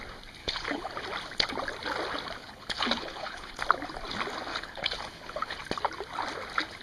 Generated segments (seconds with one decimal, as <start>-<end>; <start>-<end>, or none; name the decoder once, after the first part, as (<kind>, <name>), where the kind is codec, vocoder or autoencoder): 0.4-0.9 (codec, HILCodec); 2.4-3.6; 4.5-5.6